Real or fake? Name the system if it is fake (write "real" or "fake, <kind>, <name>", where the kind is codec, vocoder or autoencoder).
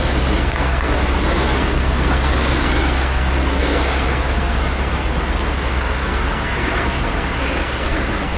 fake, codec, SNAC